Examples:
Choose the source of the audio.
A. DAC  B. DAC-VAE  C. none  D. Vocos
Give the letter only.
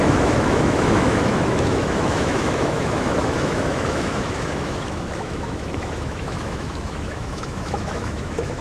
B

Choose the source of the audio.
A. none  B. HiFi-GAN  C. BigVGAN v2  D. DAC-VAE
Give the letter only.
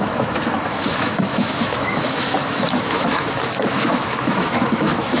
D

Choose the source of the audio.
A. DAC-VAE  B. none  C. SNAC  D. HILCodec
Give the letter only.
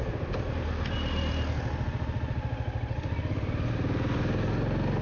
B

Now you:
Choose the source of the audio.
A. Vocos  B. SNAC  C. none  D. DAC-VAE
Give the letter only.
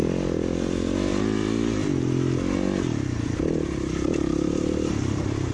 C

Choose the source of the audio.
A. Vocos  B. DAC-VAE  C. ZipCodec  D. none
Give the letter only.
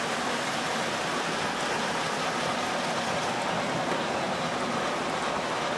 D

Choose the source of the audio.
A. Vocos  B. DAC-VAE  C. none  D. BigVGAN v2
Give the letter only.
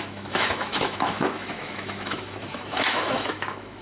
B